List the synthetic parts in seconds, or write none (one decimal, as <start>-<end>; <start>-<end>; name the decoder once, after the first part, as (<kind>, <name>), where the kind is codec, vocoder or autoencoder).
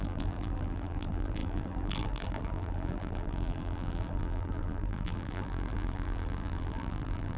0.0-7.4 (vocoder, BigVGAN v2)